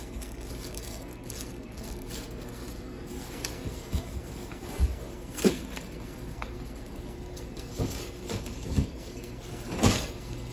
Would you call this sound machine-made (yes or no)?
yes